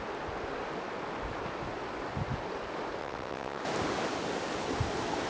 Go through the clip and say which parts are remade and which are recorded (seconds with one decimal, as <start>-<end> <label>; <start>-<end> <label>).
0.0-3.0 recorded; 3.0-3.6 remade; 3.6-5.3 recorded